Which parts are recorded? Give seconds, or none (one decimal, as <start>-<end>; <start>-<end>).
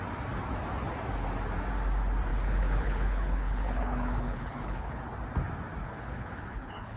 0.0-2.3; 5.0-5.8